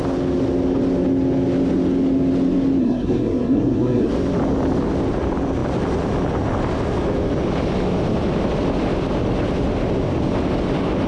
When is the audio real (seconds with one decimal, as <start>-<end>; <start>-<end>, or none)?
0.0-2.8; 4.1-11.1